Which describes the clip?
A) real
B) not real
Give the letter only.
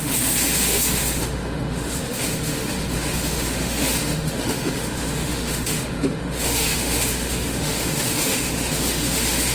B